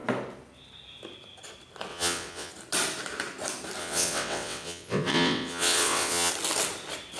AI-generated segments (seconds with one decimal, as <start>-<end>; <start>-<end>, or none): 1.9-2.5; 3.8-6.3